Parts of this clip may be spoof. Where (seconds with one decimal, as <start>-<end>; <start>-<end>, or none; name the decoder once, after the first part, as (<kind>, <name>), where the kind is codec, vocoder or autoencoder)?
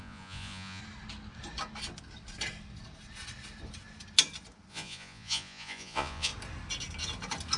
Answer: 0.0-0.8 (vocoder, Vocos); 4.7-6.3